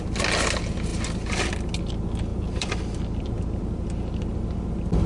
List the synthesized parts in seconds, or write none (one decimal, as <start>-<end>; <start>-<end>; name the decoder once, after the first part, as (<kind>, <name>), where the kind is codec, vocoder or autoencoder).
2.3-3.6 (vocoder, BigVGAN v2)